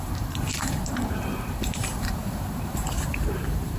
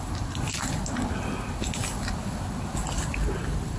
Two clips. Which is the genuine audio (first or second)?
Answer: second